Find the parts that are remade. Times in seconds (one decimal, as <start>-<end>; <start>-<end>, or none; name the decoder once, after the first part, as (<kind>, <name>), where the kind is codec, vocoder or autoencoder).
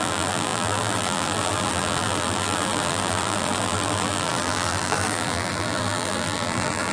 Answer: 0.0-6.9 (vocoder, BigVGAN v2)